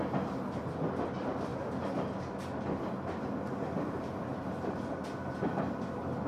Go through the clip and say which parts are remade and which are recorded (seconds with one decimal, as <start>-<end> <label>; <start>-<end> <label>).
0.0-4.3 recorded; 4.3-5.0 remade; 5.0-6.3 recorded